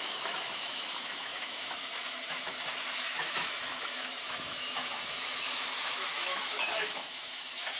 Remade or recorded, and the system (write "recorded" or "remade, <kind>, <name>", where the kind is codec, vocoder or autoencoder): remade, autoencoder, DAC-VAE